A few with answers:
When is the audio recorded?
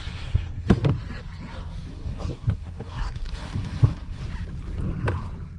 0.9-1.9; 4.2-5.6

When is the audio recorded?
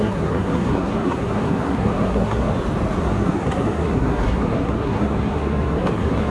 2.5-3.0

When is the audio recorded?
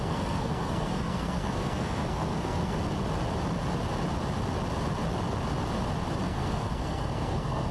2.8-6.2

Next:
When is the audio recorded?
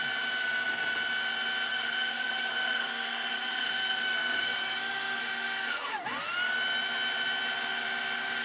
0.0-1.7; 5.9-8.4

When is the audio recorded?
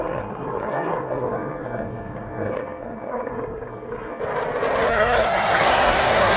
4.2-4.9